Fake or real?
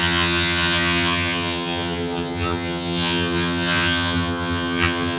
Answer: fake